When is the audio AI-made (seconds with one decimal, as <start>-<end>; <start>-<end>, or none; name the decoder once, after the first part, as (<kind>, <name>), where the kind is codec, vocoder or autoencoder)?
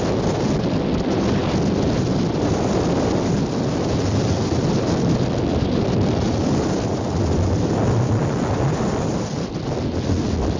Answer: none